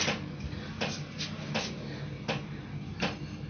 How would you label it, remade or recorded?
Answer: recorded